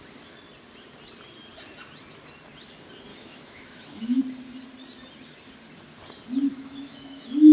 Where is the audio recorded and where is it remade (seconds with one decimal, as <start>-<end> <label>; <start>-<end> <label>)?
0.0-3.1 recorded; 3.1-4.2 remade; 4.2-6.5 recorded; 6.5-7.5 remade